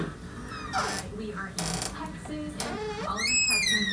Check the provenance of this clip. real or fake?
real